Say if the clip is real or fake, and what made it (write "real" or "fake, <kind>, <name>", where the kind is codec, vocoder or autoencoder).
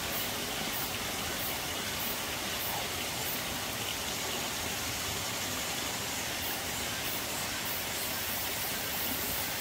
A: real